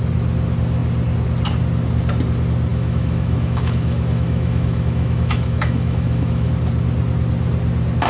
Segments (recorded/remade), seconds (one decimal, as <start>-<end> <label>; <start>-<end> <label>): 0.0-2.7 recorded; 2.7-6.5 remade; 6.5-8.1 recorded